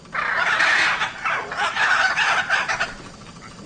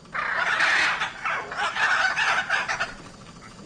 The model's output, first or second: first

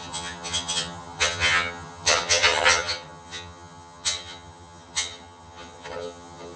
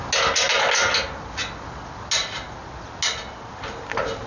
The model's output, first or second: first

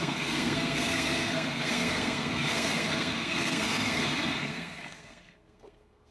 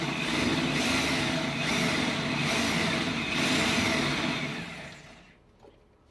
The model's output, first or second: first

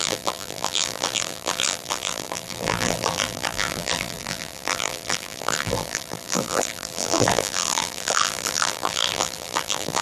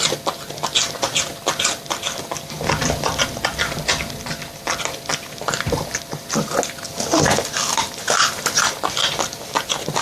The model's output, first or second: first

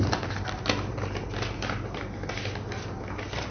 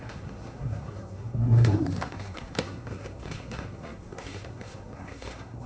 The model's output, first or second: second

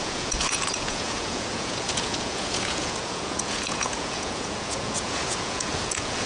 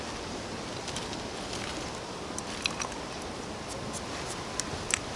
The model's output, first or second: first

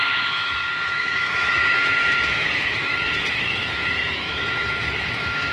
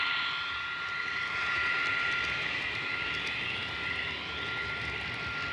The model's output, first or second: first